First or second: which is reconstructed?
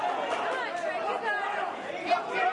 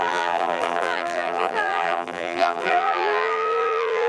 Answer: second